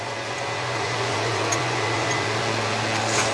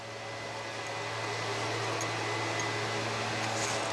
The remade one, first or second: first